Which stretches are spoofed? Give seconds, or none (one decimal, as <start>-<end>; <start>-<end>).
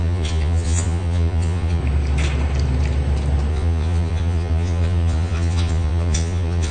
0.0-1.8; 3.5-6.7